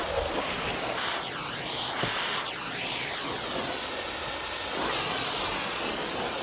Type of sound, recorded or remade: recorded